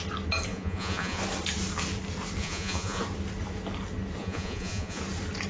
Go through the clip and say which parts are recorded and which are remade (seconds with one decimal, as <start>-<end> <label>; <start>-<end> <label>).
0.0-0.5 recorded; 0.5-1.2 remade; 1.2-2.4 recorded; 2.4-3.0 remade; 3.0-4.2 recorded; 4.2-5.0 remade; 5.0-5.5 recorded